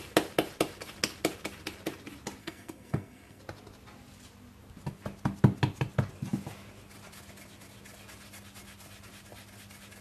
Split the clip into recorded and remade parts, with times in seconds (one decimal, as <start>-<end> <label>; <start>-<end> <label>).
0.0-2.4 recorded; 2.4-3.4 remade; 3.4-10.0 recorded